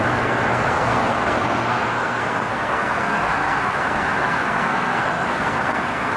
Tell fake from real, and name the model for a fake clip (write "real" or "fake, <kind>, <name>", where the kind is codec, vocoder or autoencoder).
fake, codec, SNAC